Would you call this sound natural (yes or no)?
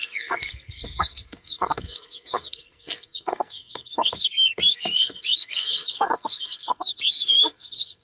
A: no